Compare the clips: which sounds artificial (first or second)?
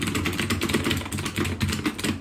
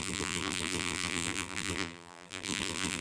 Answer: second